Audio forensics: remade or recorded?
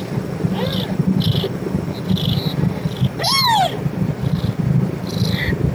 recorded